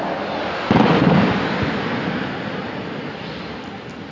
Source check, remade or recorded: recorded